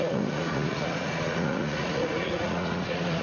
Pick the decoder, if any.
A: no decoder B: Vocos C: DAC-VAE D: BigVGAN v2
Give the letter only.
B